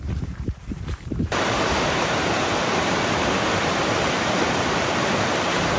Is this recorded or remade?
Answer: remade